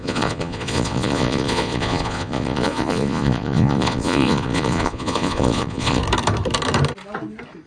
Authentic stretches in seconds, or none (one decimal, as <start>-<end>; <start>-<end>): 6.0-7.7